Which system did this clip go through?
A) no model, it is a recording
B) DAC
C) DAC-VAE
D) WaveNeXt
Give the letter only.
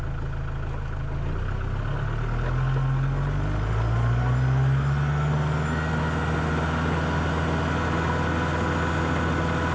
A